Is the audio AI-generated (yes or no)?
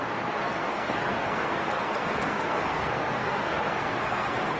yes